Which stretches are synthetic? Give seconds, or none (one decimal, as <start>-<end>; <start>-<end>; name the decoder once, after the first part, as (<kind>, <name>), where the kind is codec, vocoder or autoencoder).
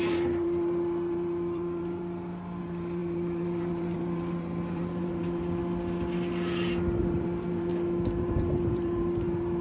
0.0-2.0 (vocoder, BigVGAN v2); 2.6-5.6; 7.0-7.7; 8.2-9.6